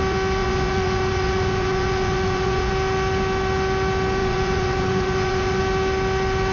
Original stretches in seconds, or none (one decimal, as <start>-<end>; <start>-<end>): 0.0-0.4; 2.7-4.2; 5.6-6.5

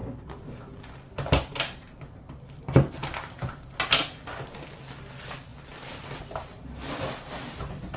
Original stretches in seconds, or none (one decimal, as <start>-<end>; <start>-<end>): 0.0-8.0

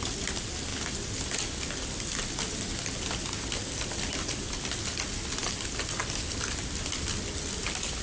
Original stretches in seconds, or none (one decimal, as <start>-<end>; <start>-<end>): 0.0-8.0

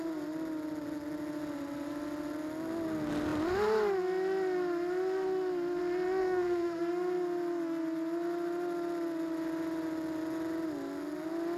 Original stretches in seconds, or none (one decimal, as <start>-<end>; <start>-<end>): 0.0-6.2; 6.8-11.6

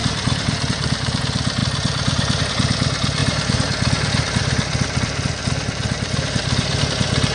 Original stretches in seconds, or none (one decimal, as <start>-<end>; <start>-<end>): 1.2-1.6; 2.4-3.2; 6.8-7.3

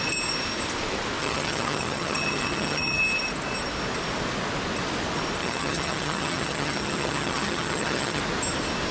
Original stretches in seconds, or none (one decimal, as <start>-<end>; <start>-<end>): 0.0-1.2; 3.0-5.4; 8.2-8.9

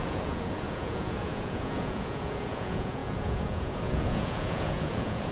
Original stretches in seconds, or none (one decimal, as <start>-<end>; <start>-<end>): none

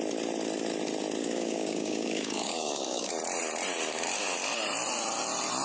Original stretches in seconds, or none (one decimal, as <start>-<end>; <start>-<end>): 0.0-1.2; 3.1-5.6